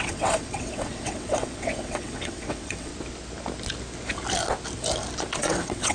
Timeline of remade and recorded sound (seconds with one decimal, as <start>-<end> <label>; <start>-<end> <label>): 0.0-2.9 remade; 2.9-5.4 recorded; 5.4-5.9 remade